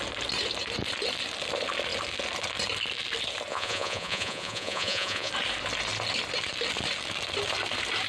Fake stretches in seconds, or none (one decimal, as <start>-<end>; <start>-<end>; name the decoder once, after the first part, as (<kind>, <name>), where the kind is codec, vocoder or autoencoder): 3.5-5.3 (vocoder, Vocos)